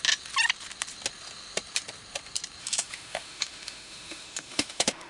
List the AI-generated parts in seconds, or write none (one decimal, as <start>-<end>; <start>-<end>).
2.6-5.1